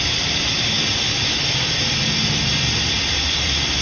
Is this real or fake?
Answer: fake